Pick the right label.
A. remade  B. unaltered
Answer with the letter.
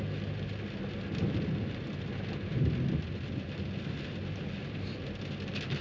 B